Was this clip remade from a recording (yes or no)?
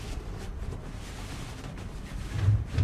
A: yes